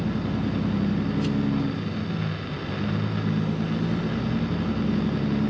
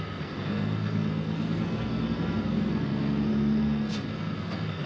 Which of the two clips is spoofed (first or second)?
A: second